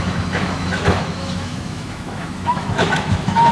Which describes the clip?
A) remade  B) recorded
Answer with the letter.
A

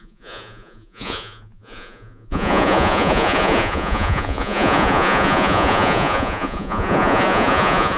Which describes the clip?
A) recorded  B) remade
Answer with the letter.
B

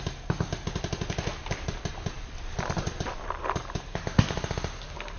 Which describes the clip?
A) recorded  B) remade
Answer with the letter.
A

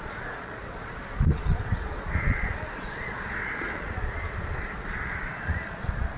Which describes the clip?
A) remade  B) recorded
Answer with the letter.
A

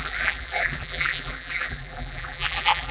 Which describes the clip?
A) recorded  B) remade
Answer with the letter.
B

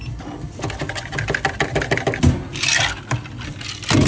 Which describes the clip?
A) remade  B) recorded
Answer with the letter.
B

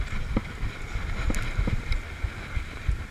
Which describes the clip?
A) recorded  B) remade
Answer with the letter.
A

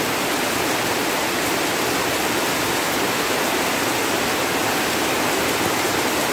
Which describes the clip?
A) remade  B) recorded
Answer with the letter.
A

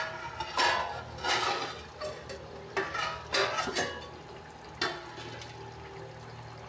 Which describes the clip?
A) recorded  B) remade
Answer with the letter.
A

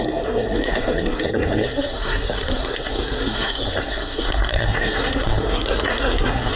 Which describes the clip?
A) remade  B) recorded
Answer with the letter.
A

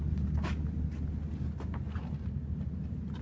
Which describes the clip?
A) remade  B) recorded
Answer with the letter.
B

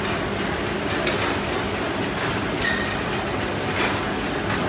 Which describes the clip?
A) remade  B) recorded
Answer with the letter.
B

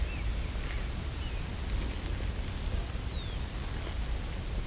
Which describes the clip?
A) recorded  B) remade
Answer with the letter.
A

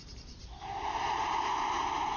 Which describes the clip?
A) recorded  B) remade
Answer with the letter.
B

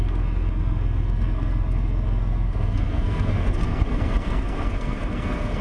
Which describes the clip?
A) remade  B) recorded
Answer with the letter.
A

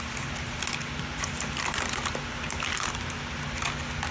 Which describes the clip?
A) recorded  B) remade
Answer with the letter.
A